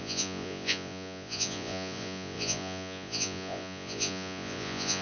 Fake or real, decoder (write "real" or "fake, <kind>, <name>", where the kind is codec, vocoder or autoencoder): fake, vocoder, Vocos